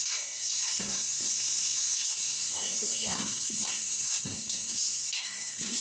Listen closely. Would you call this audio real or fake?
fake